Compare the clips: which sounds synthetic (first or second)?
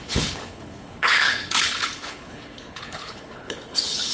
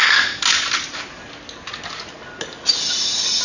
first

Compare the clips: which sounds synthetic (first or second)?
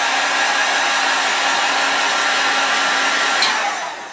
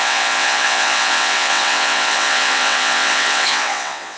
second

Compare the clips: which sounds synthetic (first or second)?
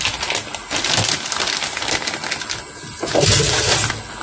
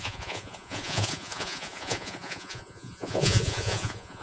second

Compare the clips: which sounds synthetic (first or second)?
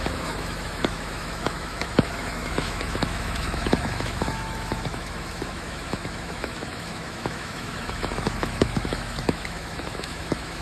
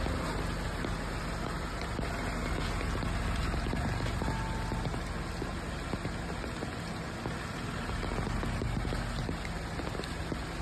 first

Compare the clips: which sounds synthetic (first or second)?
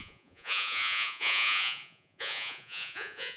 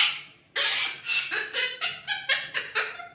first